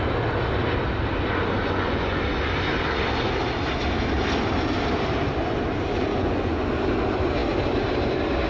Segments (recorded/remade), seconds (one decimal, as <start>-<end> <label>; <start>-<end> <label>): 0.0-1.6 recorded; 1.6-2.2 remade; 2.2-6.1 recorded; 6.1-6.7 remade; 6.7-8.5 recorded